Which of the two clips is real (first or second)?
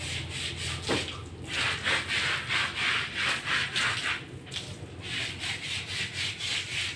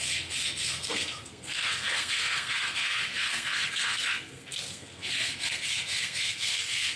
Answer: first